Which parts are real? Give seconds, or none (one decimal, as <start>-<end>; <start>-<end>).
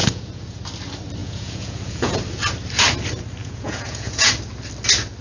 0.6-1.2; 2.2-3.4; 4.3-5.2